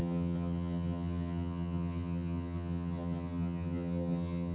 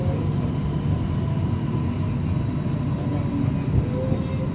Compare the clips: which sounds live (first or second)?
second